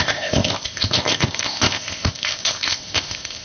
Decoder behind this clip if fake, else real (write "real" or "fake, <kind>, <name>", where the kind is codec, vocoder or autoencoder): fake, codec, ZipCodec